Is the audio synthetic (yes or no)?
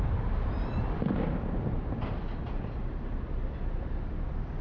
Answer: no